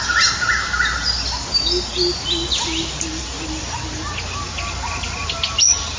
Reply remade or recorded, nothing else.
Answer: recorded